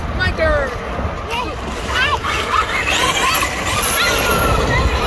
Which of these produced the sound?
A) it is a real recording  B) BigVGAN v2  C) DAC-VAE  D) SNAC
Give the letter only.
A